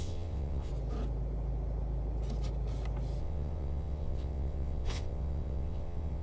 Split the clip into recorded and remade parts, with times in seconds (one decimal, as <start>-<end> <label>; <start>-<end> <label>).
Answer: 0.0-0.7 remade; 0.7-3.2 recorded; 3.2-6.2 remade